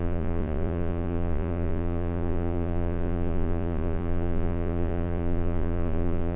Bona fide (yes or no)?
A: no